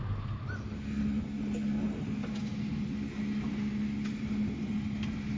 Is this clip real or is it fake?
real